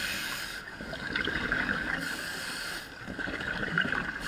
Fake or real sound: fake